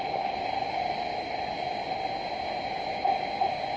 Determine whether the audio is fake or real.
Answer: real